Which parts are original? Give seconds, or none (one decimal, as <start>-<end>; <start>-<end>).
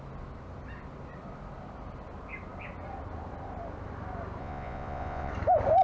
0.0-4.4; 5.3-5.8